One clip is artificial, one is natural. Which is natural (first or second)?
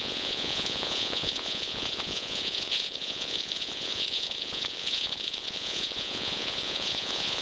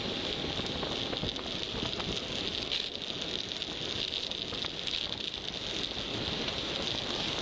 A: second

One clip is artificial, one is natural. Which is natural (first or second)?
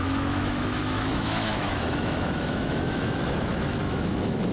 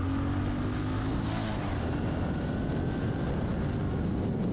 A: second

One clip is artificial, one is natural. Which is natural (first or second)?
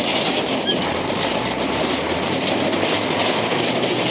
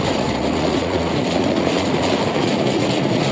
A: first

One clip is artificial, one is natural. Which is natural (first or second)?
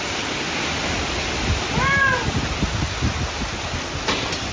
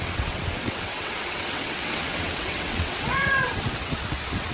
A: first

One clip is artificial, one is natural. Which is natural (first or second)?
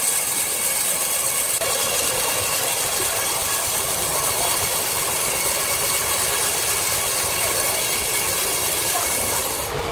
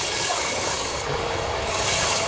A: first